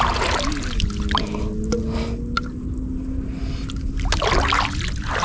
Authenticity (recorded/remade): recorded